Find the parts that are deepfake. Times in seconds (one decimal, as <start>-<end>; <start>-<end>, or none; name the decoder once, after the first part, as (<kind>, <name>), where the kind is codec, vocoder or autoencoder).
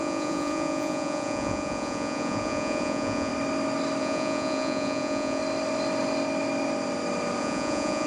0.0-3.3 (vocoder, Vocos); 4.0-5.4; 7.4-8.1